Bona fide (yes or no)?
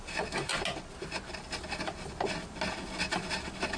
yes